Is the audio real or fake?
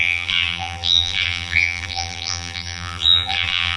fake